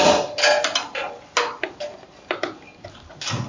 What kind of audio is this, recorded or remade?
recorded